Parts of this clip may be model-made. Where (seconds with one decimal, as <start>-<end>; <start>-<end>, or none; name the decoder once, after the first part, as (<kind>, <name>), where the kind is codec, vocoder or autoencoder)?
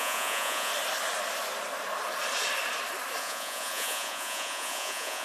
0.0-0.7 (vocoder, Vocos); 3.2-5.2